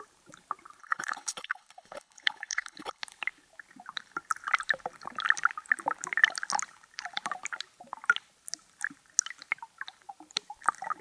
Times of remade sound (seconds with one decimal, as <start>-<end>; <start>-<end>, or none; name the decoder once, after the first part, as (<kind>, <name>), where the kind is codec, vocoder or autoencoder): 0.8-3.0 (codec, HILCodec)